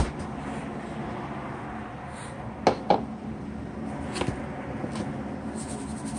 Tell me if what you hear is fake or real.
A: real